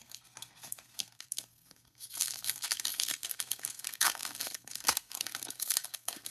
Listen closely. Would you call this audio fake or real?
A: fake